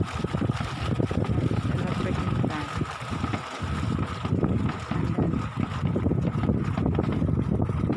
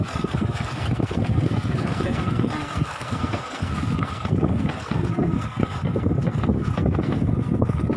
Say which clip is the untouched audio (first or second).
first